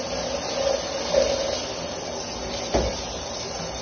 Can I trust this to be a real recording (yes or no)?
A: yes